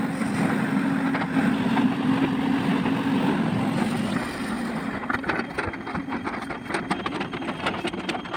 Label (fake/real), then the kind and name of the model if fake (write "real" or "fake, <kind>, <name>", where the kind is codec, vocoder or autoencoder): real